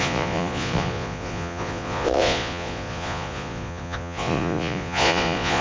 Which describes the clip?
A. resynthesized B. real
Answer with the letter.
A